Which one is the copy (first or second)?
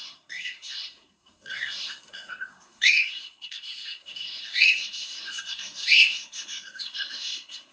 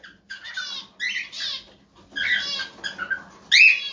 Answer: first